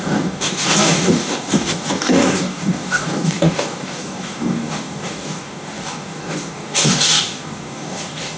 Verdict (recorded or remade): remade